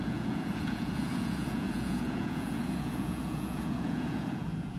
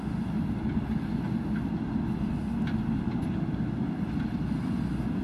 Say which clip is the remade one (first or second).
first